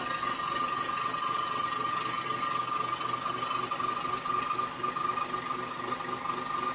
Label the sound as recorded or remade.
recorded